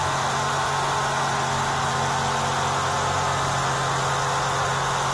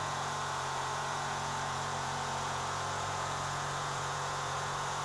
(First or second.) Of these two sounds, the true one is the first